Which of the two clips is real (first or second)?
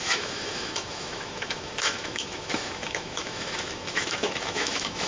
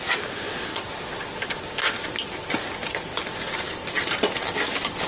second